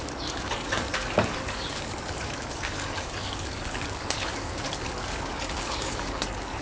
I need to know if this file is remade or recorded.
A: remade